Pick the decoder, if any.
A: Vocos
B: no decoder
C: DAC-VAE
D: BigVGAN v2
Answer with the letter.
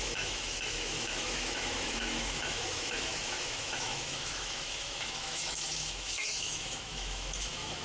C